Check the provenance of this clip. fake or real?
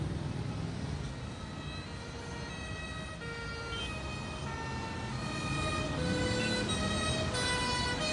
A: real